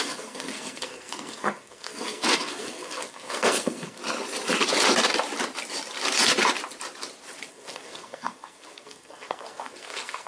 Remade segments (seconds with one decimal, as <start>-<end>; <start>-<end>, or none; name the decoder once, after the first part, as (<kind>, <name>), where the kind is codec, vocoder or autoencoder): 0.0-4.0 (codec, SNAC); 7.5-10.3